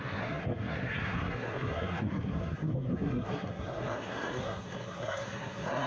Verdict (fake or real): fake